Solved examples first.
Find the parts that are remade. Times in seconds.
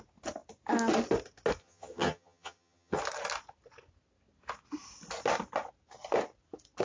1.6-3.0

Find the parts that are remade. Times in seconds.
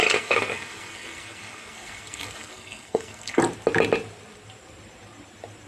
0.0-3.4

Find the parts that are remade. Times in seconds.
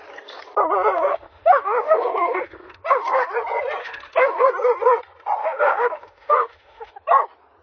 1.1-3.3; 3.8-4.5; 5.4-6.9